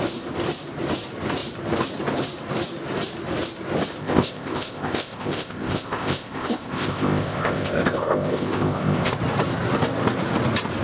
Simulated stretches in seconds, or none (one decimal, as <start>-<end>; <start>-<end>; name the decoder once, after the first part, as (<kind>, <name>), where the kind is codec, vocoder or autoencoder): 4.0-9.2 (codec, ZipCodec)